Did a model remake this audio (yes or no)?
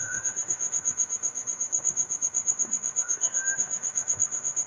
yes